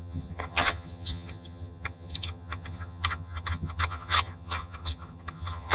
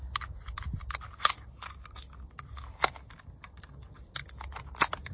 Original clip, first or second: second